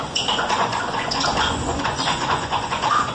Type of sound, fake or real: fake